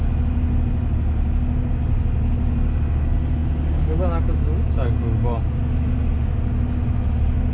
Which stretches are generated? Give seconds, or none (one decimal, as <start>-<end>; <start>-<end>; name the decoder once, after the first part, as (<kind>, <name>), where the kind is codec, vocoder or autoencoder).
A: none